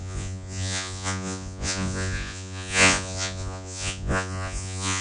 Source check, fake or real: fake